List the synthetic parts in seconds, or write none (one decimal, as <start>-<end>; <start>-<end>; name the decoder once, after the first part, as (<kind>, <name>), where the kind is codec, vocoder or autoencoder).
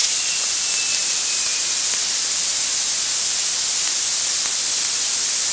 0.0-0.6 (vocoder, Vocos)